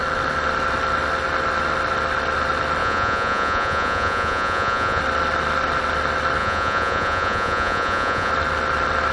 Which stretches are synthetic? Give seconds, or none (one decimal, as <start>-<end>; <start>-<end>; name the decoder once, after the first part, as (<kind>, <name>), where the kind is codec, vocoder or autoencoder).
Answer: 2.8-5.0 (vocoder, Vocos); 6.4-8.3